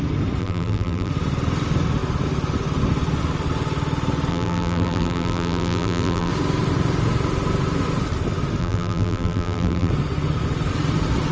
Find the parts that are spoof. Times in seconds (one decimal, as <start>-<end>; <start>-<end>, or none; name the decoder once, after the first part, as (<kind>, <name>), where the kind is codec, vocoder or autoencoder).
0.4-1.1 (vocoder, BigVGAN v2); 4.3-6.3; 8.6-9.9